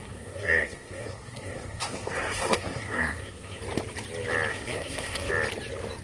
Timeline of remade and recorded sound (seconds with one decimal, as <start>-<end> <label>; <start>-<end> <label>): 0.0-3.6 remade; 3.6-4.5 recorded; 4.5-5.3 remade; 5.3-6.0 recorded